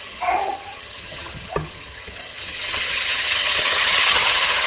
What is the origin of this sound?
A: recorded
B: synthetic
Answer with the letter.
B